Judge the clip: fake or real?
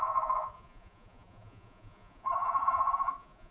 fake